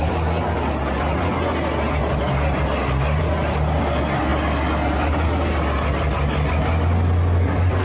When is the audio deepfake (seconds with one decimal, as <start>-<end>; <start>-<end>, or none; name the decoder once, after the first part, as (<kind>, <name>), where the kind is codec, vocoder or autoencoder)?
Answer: none